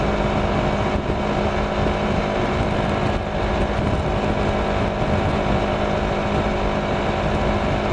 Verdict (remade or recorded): recorded